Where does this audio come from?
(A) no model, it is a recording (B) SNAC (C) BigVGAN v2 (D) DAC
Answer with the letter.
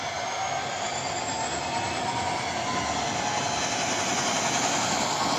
A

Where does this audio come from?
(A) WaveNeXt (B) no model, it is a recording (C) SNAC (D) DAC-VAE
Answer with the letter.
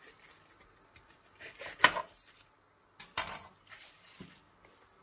B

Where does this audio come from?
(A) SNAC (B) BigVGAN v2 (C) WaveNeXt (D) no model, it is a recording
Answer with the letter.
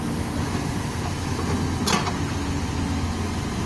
D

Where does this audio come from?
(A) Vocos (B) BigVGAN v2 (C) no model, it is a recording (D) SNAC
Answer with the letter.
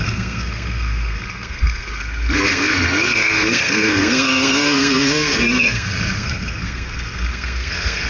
D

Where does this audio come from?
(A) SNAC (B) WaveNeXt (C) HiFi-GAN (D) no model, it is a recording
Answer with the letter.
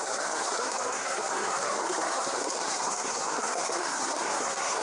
A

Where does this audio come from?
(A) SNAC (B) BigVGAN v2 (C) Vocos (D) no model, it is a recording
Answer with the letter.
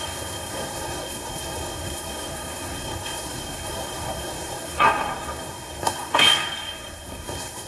A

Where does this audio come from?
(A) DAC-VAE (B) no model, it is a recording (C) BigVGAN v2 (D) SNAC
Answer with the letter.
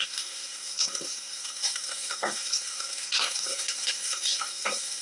D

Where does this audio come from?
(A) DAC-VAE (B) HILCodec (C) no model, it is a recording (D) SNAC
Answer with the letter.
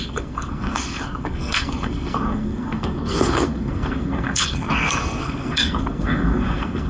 D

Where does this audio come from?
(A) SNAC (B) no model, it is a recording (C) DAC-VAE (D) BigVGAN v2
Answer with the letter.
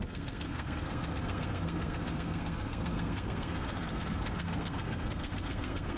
A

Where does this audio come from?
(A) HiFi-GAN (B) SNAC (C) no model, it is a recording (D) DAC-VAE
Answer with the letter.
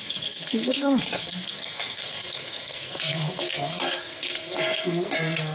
B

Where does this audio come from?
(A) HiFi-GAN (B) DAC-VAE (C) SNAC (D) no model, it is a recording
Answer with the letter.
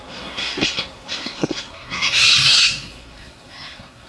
C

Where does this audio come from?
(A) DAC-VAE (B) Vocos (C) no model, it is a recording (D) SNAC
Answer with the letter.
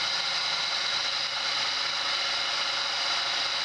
C